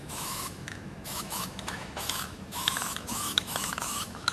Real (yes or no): no